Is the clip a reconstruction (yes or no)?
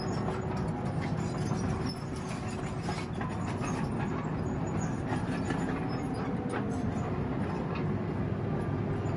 no